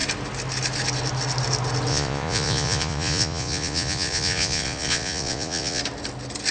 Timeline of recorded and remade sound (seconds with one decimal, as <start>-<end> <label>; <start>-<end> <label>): 0.0-1.9 recorded; 1.9-5.8 remade; 5.8-6.5 recorded